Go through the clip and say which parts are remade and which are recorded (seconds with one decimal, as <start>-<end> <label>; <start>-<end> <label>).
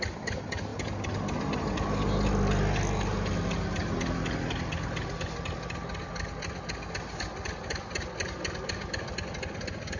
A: 0.0-10.0 recorded